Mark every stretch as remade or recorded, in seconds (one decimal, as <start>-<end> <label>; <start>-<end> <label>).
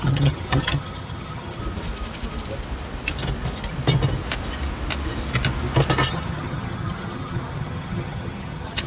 0.0-1.6 remade; 1.6-6.1 recorded; 6.1-8.9 remade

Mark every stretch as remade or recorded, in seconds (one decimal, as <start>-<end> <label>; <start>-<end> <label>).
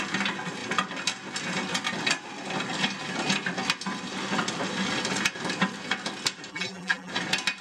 0.0-6.5 recorded; 6.5-7.1 remade; 7.1-7.6 recorded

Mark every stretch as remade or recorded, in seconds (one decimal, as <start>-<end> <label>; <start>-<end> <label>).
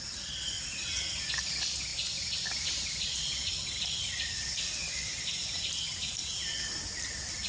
0.0-1.9 recorded; 1.9-5.7 remade; 5.7-6.2 recorded; 6.2-6.8 remade; 6.8-7.5 recorded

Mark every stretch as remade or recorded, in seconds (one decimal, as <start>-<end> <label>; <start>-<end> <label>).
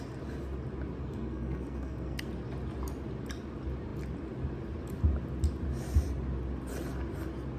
0.0-1.0 recorded; 1.0-2.3 remade; 2.3-7.6 recorded